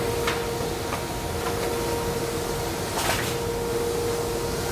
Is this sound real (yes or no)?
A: yes